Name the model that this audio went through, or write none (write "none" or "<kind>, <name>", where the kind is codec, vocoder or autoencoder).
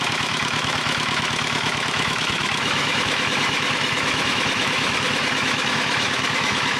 autoencoder, DAC-VAE